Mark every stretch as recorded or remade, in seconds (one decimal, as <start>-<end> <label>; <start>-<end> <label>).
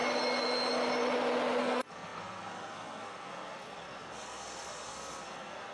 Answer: 0.0-1.6 recorded; 1.6-5.7 remade